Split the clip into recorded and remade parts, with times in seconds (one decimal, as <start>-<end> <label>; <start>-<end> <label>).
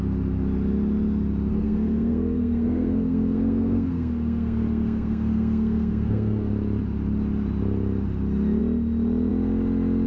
0.0-1.5 recorded; 1.5-6.5 remade; 6.5-10.1 recorded